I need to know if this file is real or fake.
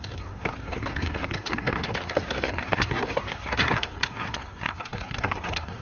fake